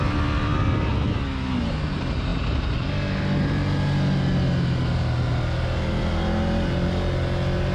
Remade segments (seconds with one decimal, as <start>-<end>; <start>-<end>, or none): none